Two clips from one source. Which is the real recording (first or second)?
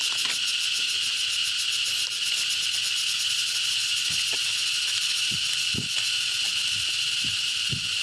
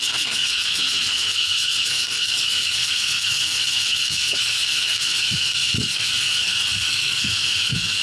first